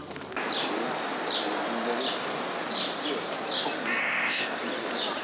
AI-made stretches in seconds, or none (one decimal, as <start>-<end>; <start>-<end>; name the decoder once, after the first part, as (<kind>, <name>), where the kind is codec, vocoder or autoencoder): 4.0-4.6 (codec, ZipCodec)